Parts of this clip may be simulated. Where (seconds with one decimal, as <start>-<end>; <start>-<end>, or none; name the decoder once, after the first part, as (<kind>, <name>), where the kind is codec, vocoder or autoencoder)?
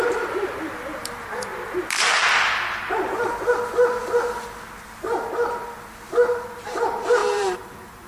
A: 0.0-1.5 (vocoder, BigVGAN v2); 6.3-8.1